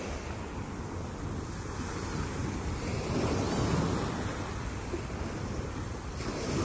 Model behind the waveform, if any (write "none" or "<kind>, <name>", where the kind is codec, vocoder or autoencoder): none